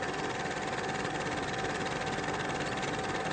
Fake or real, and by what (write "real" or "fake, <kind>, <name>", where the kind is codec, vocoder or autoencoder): real